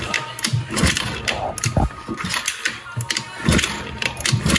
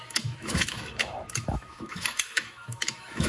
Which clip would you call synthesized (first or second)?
second